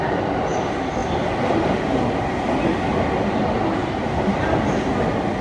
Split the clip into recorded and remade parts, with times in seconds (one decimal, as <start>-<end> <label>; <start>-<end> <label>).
0.0-1.0 recorded; 1.0-1.8 remade; 1.8-3.8 recorded; 3.8-4.3 remade; 4.3-5.4 recorded